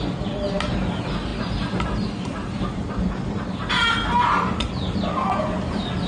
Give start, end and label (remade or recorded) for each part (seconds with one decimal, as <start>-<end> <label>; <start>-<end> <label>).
0.0-6.1 recorded